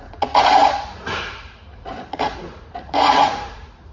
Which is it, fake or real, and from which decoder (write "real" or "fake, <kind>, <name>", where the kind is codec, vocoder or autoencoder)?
fake, vocoder, Vocos